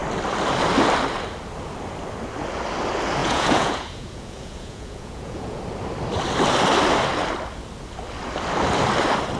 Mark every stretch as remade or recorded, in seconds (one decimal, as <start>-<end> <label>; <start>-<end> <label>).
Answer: 0.0-3.2 recorded; 3.2-5.6 remade; 5.6-9.4 recorded